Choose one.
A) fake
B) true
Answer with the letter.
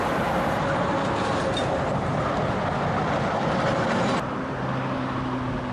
B